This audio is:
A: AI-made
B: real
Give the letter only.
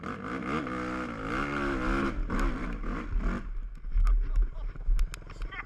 B